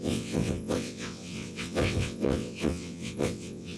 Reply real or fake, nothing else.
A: fake